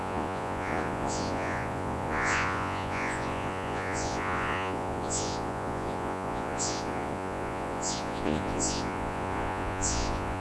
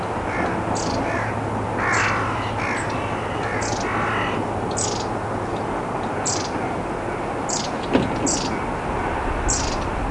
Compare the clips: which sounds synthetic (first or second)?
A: first